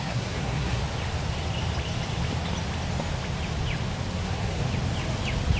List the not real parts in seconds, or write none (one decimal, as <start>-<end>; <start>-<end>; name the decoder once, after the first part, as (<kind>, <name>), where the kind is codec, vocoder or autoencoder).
0.0-0.8 (codec, SNAC); 4.1-4.6

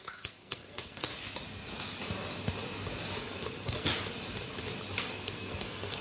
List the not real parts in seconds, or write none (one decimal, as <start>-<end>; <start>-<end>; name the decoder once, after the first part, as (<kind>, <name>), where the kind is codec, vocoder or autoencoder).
0.0-1.1 (codec, SNAC); 3.2-3.9; 5.0-6.0

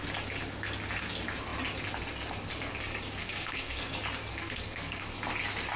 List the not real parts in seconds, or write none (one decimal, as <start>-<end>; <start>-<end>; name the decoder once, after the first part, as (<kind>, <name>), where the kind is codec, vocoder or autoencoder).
3.2-3.9 (codec, SNAC); 4.3-5.0

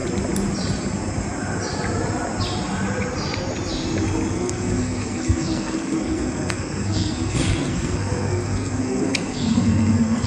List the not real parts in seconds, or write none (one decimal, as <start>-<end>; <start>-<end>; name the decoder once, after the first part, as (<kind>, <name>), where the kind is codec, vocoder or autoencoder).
4.3-10.3 (codec, SNAC)